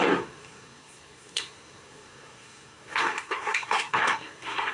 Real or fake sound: fake